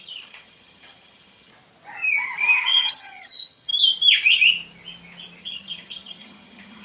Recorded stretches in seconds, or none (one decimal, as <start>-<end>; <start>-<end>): 1.5-2.4; 3.7-5.4